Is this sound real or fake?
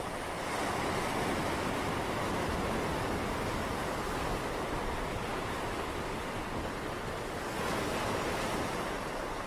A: real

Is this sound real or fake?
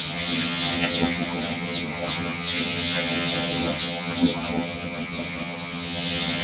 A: fake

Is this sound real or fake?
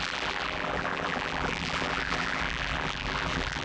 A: fake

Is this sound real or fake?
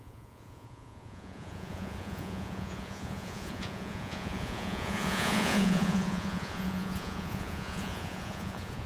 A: fake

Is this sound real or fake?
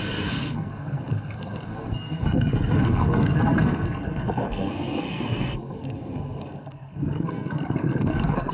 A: fake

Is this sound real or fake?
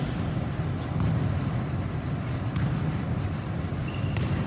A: real